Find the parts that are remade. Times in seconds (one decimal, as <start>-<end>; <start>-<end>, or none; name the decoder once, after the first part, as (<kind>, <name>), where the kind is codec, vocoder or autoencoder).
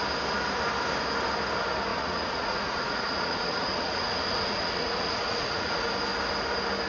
1.9-5.9 (vocoder, Vocos)